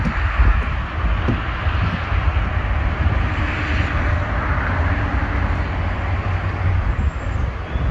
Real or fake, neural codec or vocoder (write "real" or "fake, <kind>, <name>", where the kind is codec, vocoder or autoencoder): real